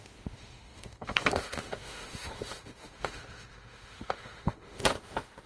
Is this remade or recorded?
remade